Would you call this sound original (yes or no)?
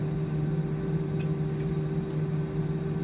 yes